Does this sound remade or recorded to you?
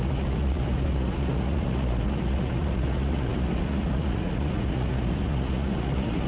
remade